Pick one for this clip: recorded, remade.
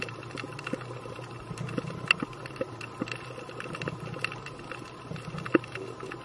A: recorded